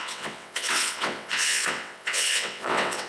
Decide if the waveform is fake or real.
fake